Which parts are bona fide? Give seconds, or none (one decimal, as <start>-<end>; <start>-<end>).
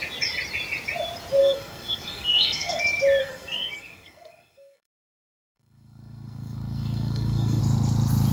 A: 0.0-1.4; 2.8-3.2; 7.6-8.3